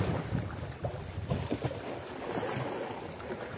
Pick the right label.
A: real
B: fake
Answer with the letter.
A